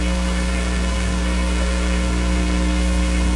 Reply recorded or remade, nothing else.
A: remade